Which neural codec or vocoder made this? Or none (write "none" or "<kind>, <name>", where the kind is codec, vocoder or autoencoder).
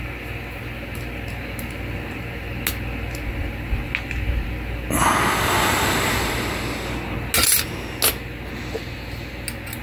none